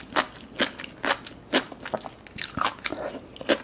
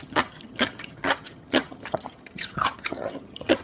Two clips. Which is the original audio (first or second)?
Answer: first